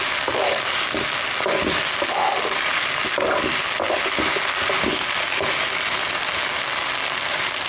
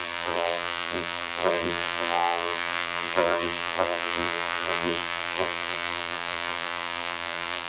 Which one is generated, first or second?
second